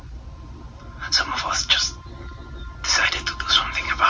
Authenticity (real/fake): real